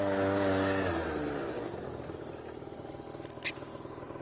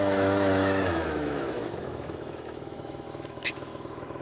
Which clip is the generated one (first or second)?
second